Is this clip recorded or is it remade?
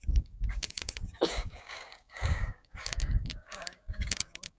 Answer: remade